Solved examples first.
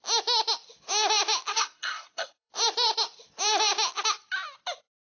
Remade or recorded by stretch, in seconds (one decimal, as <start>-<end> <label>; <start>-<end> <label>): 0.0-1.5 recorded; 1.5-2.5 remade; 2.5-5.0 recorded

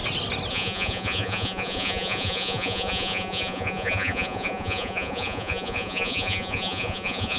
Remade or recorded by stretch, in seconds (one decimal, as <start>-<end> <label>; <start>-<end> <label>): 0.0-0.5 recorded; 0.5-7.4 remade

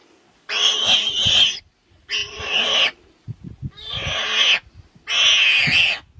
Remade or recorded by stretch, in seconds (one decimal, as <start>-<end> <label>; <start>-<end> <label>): 0.0-1.6 remade; 1.6-2.2 recorded; 2.2-3.9 remade; 3.9-6.2 recorded

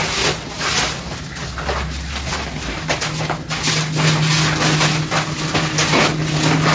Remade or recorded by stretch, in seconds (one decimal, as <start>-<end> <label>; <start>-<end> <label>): 0.0-6.7 recorded